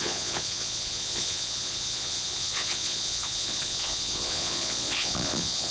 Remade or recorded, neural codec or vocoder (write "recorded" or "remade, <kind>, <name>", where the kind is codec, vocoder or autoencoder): remade, vocoder, Vocos